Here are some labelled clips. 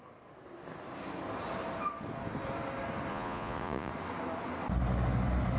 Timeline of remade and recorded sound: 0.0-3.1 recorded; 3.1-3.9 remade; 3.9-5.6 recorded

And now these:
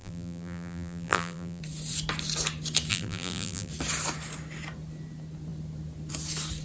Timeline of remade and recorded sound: 0.0-1.6 remade; 1.6-2.9 recorded; 2.9-3.7 remade; 3.7-6.6 recorded